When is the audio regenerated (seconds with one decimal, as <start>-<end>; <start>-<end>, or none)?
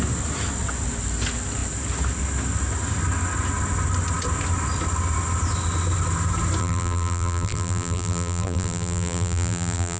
6.6-10.0